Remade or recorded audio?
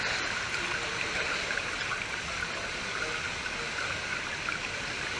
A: recorded